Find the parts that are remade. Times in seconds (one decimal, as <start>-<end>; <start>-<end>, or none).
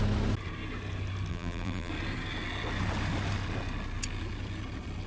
1.3-1.9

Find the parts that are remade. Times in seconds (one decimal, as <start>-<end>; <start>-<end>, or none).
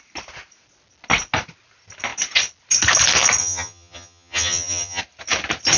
3.4-5.0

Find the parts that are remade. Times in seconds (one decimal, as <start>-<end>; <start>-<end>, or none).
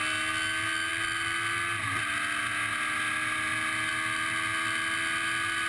none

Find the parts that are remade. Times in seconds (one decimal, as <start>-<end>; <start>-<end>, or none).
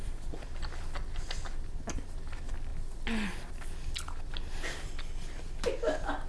none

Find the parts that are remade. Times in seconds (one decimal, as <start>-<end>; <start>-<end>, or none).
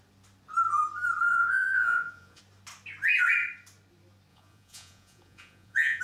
1.3-2.4; 4.3-6.0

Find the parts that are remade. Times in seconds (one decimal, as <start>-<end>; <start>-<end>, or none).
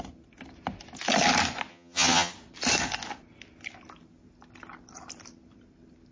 1.7-2.3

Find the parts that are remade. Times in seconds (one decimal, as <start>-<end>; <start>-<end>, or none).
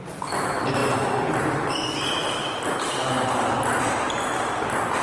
none